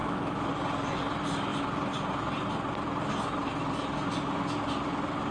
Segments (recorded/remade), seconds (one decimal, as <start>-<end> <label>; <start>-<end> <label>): 0.0-0.5 remade; 0.5-5.3 recorded